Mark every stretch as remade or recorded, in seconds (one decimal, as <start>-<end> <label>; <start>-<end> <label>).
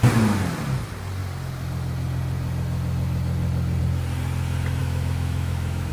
0.0-4.8 recorded; 4.8-5.9 remade